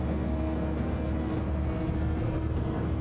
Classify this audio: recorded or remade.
remade